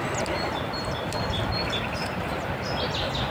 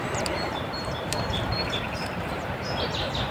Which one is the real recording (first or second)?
first